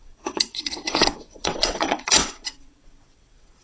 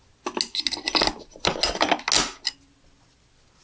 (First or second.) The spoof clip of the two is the first